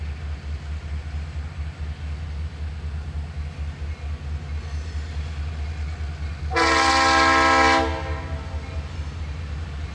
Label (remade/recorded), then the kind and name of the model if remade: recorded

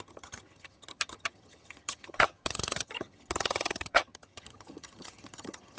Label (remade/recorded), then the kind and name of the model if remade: remade, vocoder, HiFi-GAN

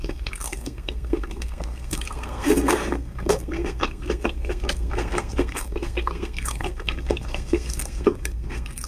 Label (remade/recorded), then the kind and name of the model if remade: remade, codec, SNAC